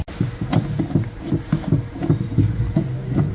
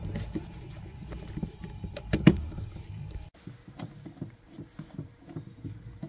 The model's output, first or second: second